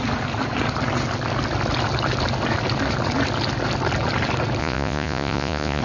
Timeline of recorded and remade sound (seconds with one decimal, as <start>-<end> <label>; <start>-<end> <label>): 0.0-4.6 recorded; 4.6-5.8 remade